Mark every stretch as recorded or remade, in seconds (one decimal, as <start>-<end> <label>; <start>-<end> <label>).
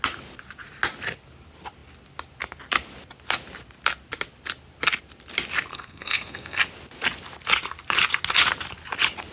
0.0-5.7 recorded; 5.7-6.6 remade; 6.6-9.3 recorded